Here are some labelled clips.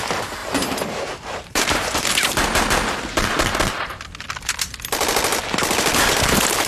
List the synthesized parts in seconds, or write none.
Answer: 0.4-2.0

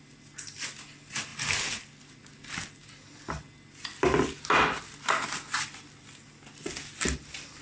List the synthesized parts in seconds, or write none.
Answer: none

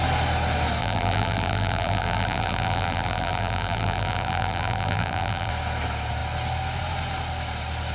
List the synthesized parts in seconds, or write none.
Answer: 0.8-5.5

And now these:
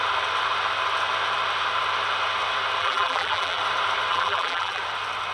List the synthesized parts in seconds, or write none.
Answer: 2.8-3.6; 4.1-4.8

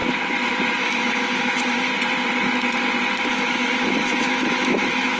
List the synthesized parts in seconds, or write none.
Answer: 0.8-1.9; 3.3-5.2

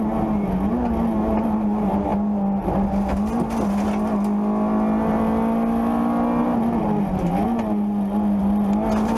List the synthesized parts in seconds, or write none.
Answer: none

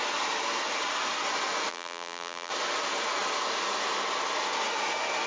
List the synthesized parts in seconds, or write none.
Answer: 1.7-2.5

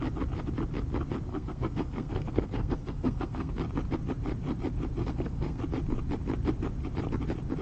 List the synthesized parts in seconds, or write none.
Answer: 1.3-3.5; 5.0-5.6